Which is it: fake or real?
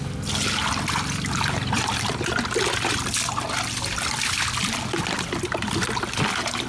real